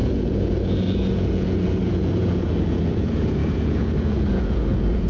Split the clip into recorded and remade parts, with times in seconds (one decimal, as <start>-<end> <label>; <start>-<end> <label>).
0.0-5.1 remade